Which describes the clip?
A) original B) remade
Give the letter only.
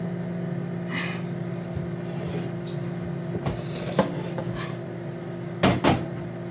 A